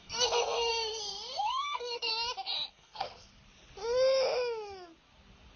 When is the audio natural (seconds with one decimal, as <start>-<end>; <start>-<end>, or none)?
2.1-2.7; 3.3-5.6